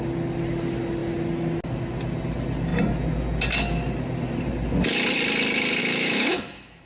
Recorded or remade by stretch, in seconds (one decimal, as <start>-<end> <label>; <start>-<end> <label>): 0.0-5.8 recorded; 5.8-6.9 remade